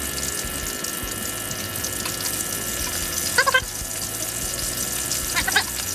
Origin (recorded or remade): recorded